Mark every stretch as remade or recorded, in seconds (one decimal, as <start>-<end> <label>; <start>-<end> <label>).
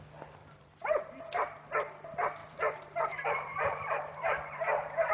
0.0-0.4 recorded; 0.4-1.0 remade; 1.0-2.4 recorded; 2.4-5.1 remade